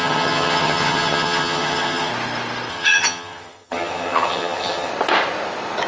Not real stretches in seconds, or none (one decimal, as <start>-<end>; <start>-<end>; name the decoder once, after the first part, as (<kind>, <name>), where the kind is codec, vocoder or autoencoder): 0.0-2.1 (vocoder, HiFi-GAN); 2.7-4.9

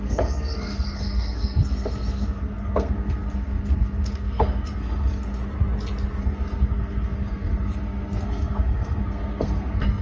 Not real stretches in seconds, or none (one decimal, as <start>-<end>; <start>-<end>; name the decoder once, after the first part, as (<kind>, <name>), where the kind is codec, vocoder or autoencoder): 0.0-5.4 (codec, SNAC); 6.2-10.0

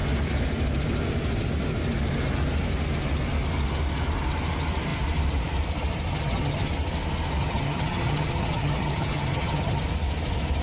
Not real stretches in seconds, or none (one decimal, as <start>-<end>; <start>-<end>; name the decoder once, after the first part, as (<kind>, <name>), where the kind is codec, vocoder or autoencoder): 6.1-6.7 (vocoder, HiFi-GAN); 7.4-9.8

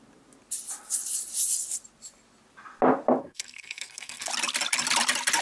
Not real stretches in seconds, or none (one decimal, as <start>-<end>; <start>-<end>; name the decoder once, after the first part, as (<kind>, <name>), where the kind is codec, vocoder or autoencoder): 3.2-4.3 (codec, SNAC)

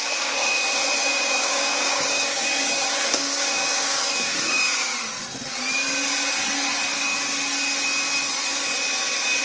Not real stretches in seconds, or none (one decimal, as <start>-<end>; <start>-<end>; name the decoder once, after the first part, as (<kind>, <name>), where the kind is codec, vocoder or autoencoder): 0.0-0.4 (codec, DAC); 1.0-4.9